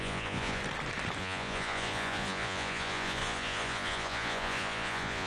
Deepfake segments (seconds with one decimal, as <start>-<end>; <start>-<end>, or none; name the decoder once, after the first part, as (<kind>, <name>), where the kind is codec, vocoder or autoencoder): 0.0-0.6 (vocoder, Vocos); 1.2-5.3